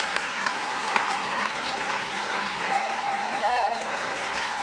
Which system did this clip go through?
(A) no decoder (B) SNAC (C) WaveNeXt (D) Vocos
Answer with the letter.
B